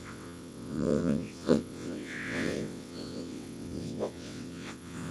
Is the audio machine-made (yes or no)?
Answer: yes